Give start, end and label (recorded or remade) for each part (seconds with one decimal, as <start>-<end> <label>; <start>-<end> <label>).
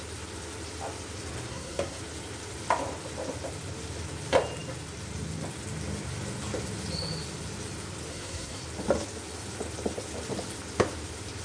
0.0-1.5 recorded; 1.5-2.0 remade; 2.0-8.1 recorded; 8.1-8.6 remade; 8.6-11.4 recorded